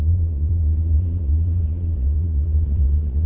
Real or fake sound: fake